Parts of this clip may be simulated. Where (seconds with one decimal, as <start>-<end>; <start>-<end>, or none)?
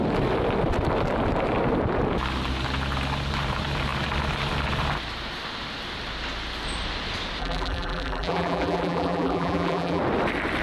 7.4-10.0